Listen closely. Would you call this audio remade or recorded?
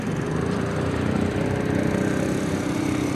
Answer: remade